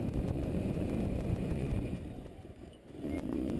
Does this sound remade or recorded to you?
remade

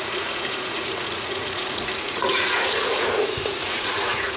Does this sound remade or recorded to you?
remade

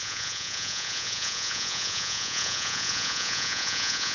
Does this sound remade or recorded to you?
remade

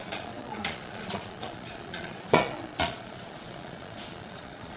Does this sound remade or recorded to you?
remade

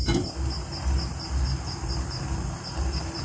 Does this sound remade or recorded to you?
recorded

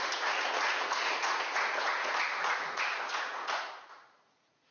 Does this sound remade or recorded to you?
remade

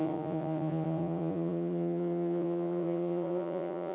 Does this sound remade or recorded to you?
remade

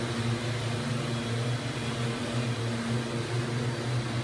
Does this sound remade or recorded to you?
recorded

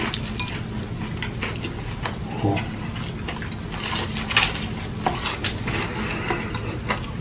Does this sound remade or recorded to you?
recorded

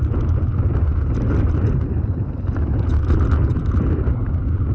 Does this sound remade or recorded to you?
recorded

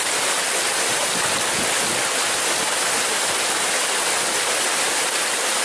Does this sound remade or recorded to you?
recorded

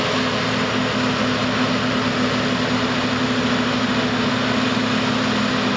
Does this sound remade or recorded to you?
recorded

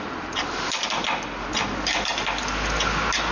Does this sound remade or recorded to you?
recorded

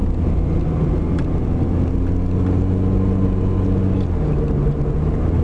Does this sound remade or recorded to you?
recorded